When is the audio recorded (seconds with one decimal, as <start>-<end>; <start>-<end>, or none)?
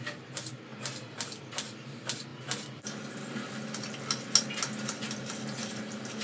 0.0-6.2